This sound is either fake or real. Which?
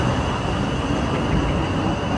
real